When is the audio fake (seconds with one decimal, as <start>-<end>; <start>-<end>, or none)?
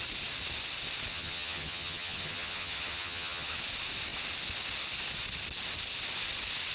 1.1-3.6